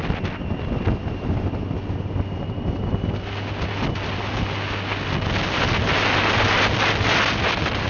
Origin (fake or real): real